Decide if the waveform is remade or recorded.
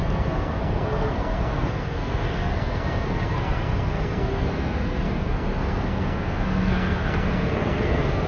remade